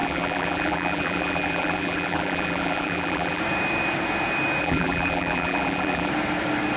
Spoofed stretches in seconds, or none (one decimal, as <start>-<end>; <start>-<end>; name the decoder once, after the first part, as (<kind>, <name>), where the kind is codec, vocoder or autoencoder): 0.0-3.4 (vocoder, BigVGAN v2); 4.6-6.1